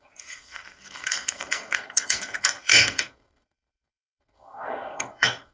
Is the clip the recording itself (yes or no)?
no